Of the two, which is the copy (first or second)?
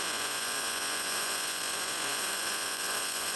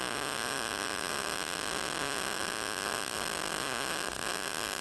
first